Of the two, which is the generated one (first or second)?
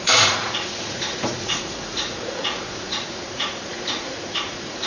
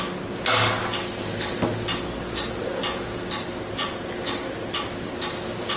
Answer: first